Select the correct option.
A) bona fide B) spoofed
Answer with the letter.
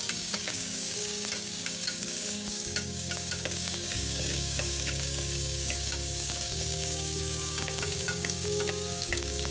B